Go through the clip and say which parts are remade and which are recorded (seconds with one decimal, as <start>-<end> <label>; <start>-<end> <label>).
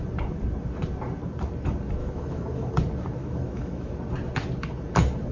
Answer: 0.0-2.0 recorded; 2.0-2.7 remade; 2.7-3.2 recorded; 3.2-3.9 remade; 3.9-5.3 recorded